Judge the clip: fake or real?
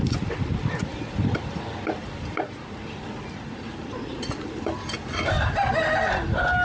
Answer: real